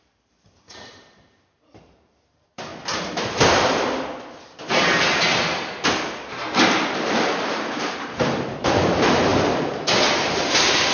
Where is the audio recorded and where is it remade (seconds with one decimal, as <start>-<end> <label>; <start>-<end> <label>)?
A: 0.0-2.7 remade; 2.7-6.9 recorded; 6.9-10.9 remade